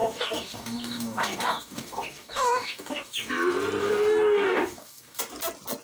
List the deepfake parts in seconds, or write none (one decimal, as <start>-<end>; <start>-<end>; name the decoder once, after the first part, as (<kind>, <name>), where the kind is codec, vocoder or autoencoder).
0.0-3.3 (codec, DAC); 3.8-5.2